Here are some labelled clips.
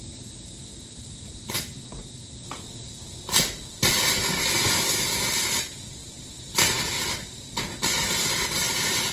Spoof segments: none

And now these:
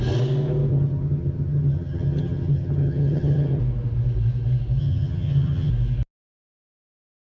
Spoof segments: 0.7-3.6 (vocoder, HiFi-GAN); 4.8-5.7

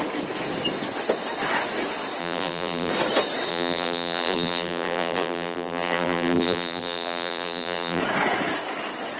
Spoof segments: 2.2-2.9 (vocoder, BigVGAN v2); 3.5-8.0

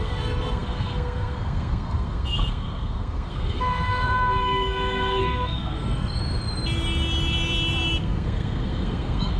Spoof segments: 0.0-6.2 (codec, SNAC); 8.0-9.4

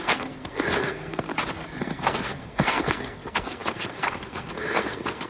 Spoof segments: 0.0-1.3 (codec, SNAC); 1.8-5.3